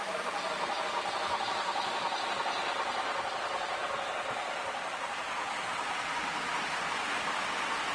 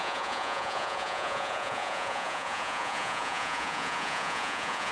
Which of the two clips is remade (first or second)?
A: second